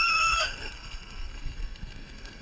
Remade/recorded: remade